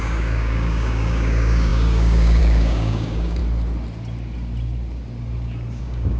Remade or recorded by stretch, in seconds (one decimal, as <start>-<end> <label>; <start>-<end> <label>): 0.0-3.4 remade; 3.4-5.8 recorded; 5.8-6.2 remade